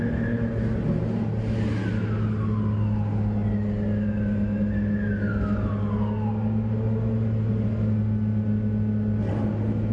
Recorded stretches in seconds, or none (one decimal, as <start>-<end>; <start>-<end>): 0.0-9.9